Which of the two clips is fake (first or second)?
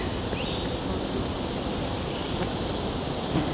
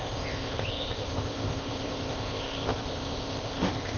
second